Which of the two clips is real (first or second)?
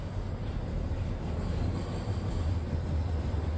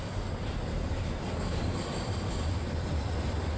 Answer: first